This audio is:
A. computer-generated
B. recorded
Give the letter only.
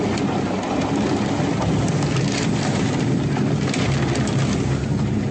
B